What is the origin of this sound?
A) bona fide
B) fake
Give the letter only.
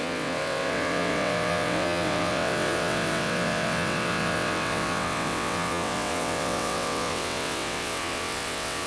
B